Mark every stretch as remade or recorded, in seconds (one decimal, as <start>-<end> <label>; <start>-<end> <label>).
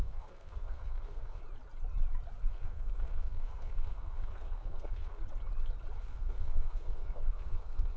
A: 0.0-1.4 remade; 1.4-2.5 recorded; 2.5-5.2 remade; 5.2-6.0 recorded; 6.0-8.0 remade